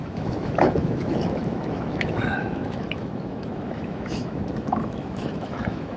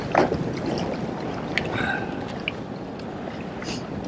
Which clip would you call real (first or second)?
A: second